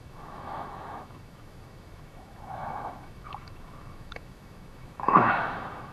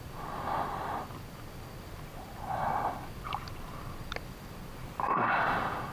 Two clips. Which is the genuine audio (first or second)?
second